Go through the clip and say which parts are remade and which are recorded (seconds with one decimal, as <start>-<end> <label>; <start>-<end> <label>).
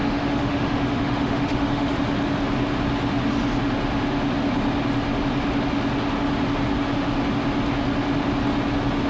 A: 0.0-1.9 remade; 1.9-9.1 recorded